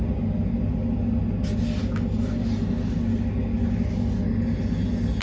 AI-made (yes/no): no